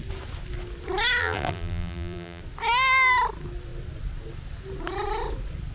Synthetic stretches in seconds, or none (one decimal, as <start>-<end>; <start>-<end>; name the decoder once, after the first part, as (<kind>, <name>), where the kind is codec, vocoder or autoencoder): 1.2-2.4 (vocoder, BigVGAN v2)